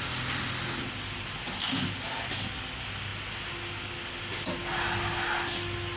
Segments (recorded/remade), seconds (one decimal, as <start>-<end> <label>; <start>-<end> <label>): 0.0-6.0 recorded